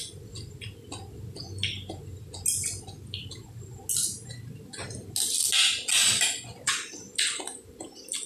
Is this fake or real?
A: real